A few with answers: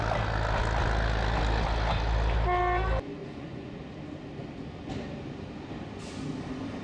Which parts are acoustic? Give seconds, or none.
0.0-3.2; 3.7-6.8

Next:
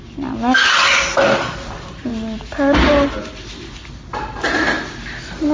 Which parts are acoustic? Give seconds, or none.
0.0-5.5

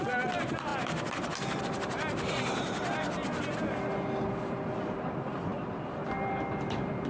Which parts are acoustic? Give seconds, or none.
0.0-7.1

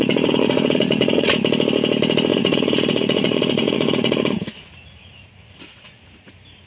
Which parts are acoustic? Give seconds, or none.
1.3-2.3; 6.3-6.7